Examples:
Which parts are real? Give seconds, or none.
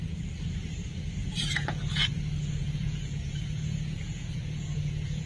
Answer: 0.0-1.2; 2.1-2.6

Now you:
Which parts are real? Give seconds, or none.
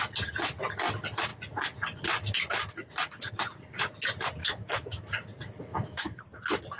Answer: 0.0-4.4; 5.0-5.7; 6.2-6.8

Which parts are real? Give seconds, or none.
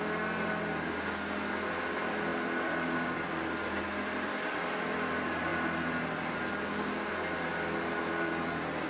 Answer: 0.0-8.9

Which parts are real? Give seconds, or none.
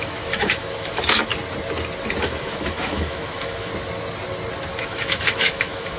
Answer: 1.3-2.2; 3.7-4.8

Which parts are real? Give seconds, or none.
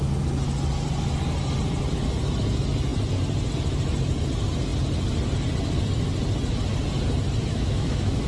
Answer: 0.0-7.5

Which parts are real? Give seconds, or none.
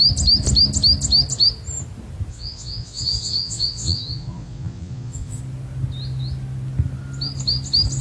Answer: 0.0-2.3; 5.4-8.0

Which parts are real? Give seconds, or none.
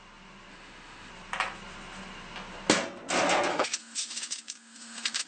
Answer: 0.0-0.5; 1.1-3.5